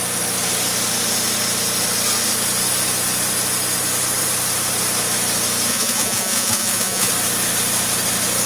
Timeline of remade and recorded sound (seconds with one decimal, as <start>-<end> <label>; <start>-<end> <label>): 0.0-5.7 recorded; 5.7-7.1 remade; 7.1-8.5 recorded